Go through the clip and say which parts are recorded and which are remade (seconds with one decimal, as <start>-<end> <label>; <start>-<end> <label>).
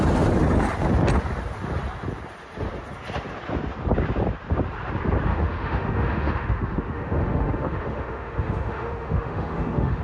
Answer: 0.0-5.3 recorded; 5.3-10.0 remade